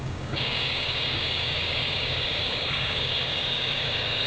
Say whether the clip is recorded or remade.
remade